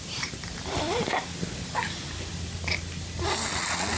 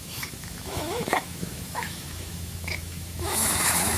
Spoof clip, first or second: second